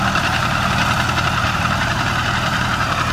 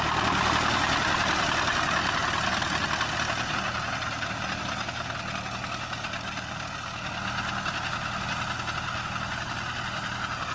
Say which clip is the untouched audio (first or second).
second